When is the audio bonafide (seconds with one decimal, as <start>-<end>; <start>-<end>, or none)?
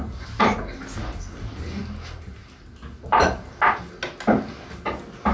0.0-5.3